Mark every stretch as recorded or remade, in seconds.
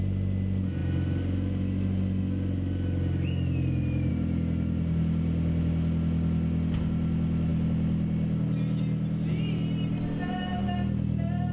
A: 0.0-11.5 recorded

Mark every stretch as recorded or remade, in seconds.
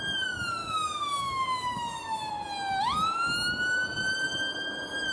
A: 0.0-0.6 recorded; 0.6-2.3 remade; 2.3-5.1 recorded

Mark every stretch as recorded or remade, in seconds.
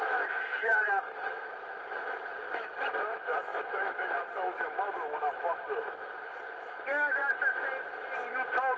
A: 0.0-7.2 remade; 7.2-8.8 recorded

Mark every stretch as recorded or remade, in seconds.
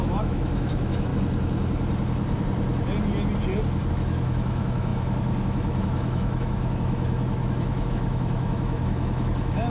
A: 0.0-1.1 remade; 1.1-3.9 recorded; 3.9-9.7 remade